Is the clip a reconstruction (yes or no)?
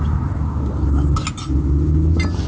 no